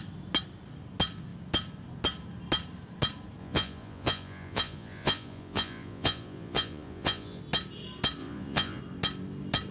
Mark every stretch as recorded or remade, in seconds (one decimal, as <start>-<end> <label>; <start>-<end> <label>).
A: 0.0-3.4 recorded; 3.4-7.4 remade; 7.4-8.2 recorded; 8.2-8.8 remade; 8.8-9.7 recorded